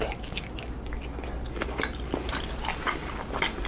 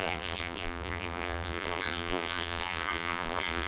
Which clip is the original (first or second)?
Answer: first